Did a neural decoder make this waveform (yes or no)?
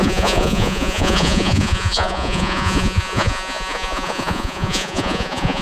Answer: yes